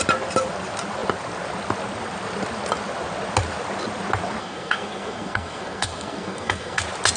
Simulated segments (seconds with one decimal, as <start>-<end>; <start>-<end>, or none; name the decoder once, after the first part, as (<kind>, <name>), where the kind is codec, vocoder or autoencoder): 4.4-6.8 (codec, SNAC)